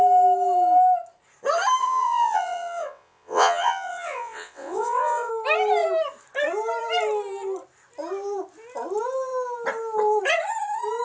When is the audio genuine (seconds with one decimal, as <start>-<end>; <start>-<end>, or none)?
0.0-1.8; 5.3-11.0